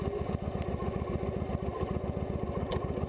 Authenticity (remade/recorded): recorded